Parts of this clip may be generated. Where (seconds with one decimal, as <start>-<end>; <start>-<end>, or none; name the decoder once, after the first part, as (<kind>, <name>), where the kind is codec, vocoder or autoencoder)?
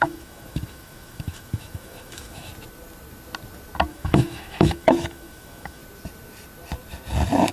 0.0-2.5 (autoencoder, DAC-VAE); 3.9-5.8